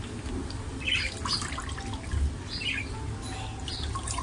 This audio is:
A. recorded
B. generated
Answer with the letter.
A